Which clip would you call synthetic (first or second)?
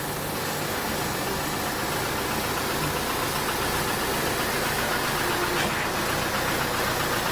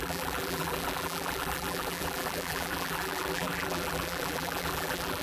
second